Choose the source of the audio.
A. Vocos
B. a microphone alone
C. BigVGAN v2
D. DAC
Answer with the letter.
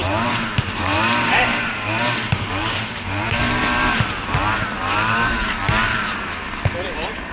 C